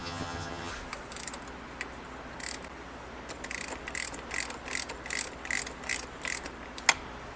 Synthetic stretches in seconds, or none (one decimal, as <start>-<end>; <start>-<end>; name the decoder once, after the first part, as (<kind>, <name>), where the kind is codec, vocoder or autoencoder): 0.0-0.7 (vocoder, HiFi-GAN)